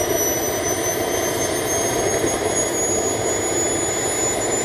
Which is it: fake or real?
real